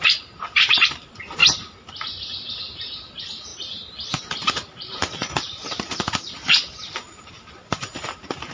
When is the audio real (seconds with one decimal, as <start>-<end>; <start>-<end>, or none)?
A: 1.4-2.0